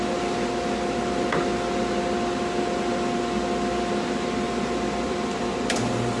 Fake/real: real